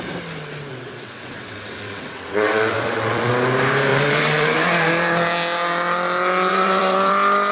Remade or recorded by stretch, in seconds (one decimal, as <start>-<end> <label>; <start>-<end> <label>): 0.0-0.7 recorded; 0.7-3.3 remade; 3.3-3.9 recorded; 3.9-4.7 remade; 4.7-6.5 recorded; 6.5-7.1 remade; 7.1-7.5 recorded